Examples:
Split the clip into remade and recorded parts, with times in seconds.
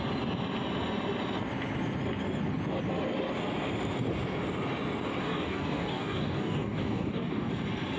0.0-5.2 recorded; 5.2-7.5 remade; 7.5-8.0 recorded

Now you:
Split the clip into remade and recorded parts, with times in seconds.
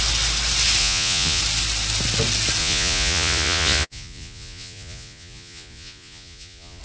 0.0-0.8 recorded; 0.8-1.4 remade; 1.4-2.6 recorded; 2.6-6.8 remade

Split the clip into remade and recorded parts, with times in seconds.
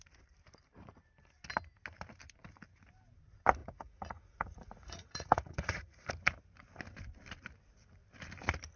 0.0-3.6 recorded; 3.6-6.1 remade; 6.1-8.8 recorded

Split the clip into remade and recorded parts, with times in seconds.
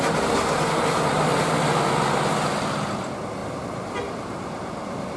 0.0-5.2 recorded